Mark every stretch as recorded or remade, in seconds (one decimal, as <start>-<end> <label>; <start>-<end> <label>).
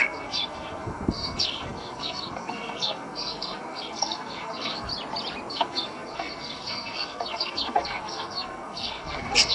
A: 0.0-4.9 remade; 4.9-5.5 recorded; 5.5-9.5 remade